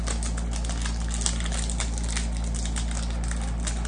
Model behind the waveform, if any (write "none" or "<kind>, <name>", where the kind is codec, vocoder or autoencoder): none